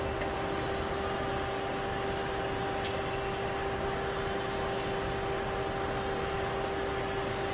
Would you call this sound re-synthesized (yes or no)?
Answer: no